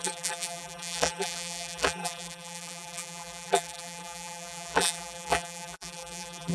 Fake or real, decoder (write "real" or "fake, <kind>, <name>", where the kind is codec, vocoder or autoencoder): fake, vocoder, BigVGAN v2